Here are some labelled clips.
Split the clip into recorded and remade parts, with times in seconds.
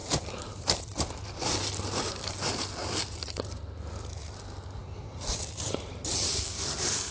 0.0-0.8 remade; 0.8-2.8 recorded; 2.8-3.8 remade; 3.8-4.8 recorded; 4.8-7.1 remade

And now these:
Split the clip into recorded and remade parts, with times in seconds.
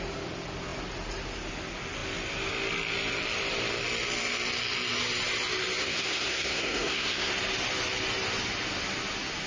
0.0-5.8 recorded; 5.8-7.3 remade; 7.3-9.5 recorded